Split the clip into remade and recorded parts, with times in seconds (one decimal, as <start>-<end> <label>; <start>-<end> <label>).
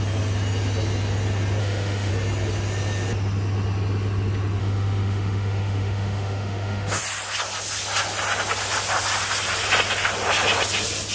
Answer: 0.0-1.6 recorded; 1.6-2.1 remade; 2.1-4.6 recorded; 4.6-7.0 remade; 7.0-11.1 recorded